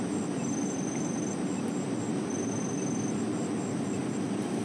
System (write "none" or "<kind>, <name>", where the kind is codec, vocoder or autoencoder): none